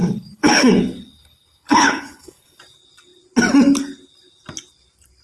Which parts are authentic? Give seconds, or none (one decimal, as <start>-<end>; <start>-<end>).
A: 2.6-5.2